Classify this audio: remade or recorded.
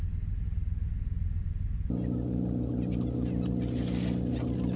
recorded